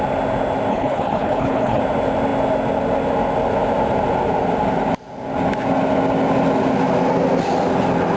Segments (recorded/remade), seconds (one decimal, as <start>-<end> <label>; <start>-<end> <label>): 0.0-0.7 recorded; 0.7-1.8 remade; 1.8-8.2 recorded